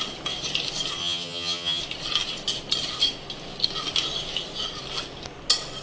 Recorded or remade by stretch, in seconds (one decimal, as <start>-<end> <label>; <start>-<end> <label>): 0.0-1.0 recorded; 1.0-1.8 remade; 1.8-5.8 recorded